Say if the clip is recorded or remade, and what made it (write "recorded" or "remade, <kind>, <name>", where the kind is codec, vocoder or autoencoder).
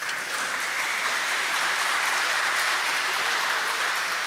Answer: remade, vocoder, BigVGAN v2